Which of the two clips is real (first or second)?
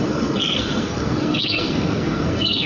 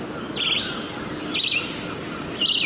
second